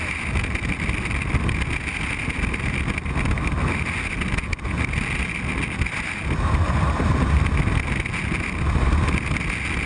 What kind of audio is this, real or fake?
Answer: real